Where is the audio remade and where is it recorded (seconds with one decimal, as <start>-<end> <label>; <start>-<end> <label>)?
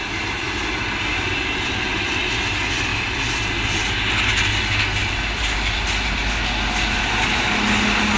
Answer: 0.0-8.2 recorded